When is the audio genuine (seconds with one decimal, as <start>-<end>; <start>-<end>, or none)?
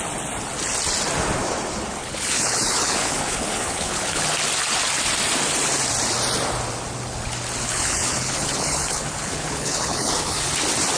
0.0-2.0; 4.2-7.6; 10.5-11.0